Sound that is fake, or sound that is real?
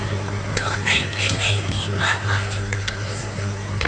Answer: fake